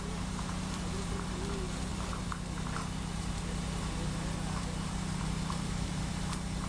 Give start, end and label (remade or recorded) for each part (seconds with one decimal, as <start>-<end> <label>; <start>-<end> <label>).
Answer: 0.0-6.7 remade